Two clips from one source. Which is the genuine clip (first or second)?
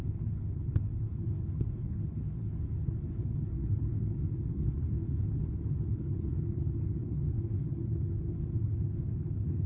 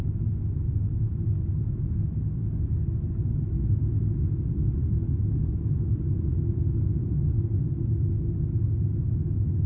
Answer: second